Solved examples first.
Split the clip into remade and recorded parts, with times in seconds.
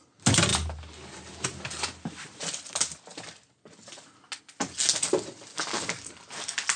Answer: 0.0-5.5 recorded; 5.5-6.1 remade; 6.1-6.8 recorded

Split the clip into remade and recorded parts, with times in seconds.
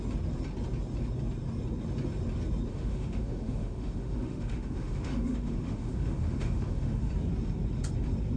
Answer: 0.0-2.7 recorded; 2.7-7.1 remade; 7.1-8.4 recorded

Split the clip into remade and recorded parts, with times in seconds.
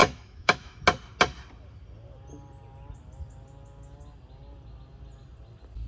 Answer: 0.0-0.8 remade; 0.8-5.9 recorded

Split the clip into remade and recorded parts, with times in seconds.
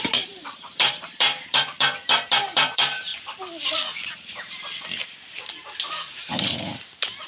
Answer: 0.0-3.1 remade; 3.1-5.3 recorded; 5.3-7.3 remade